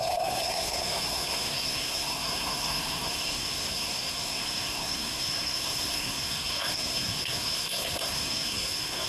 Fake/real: fake